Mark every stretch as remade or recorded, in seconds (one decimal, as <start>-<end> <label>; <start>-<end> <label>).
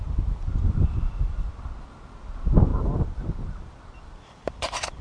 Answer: 0.0-0.4 recorded; 0.4-1.5 remade; 1.5-2.7 recorded; 2.7-5.0 remade